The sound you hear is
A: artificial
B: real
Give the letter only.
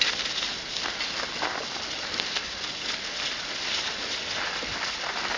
B